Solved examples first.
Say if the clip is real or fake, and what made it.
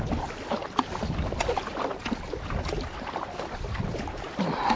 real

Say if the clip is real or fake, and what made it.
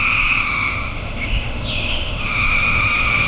fake, autoencoder, DAC-VAE